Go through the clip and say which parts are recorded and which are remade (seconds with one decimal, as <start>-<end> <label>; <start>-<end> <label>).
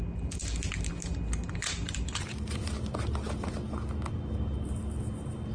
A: 0.0-5.5 recorded